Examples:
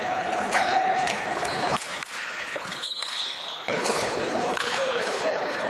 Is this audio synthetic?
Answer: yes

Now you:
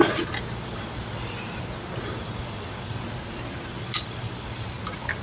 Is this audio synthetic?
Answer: no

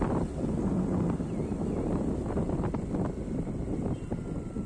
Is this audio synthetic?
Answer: no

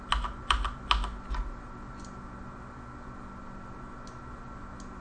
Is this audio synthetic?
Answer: no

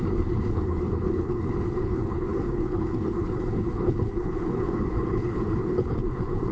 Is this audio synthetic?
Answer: yes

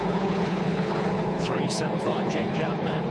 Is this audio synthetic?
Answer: yes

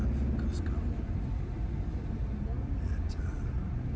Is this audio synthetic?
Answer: no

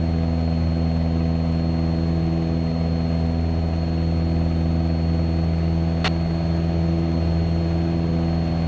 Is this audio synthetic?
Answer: no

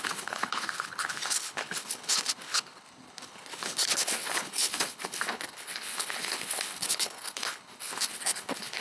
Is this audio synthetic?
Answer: yes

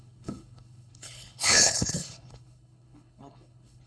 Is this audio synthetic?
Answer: yes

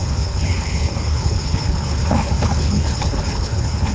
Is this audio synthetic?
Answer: yes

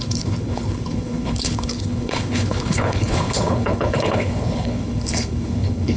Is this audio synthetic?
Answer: yes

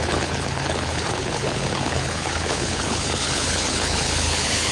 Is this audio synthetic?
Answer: yes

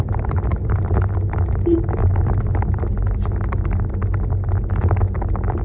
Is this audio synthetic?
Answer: no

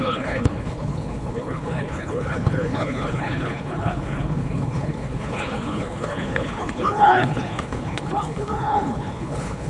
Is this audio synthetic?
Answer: yes